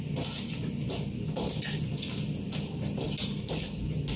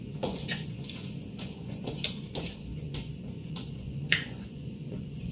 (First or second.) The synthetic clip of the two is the second